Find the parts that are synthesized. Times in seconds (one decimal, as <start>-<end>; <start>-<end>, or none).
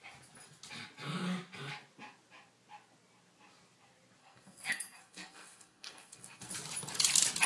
4.2-6.5